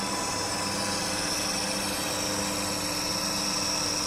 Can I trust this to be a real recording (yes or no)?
yes